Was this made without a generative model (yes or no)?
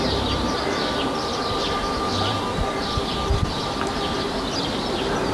no